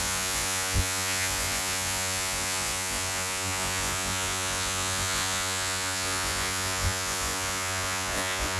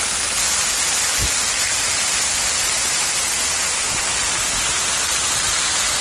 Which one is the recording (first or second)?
second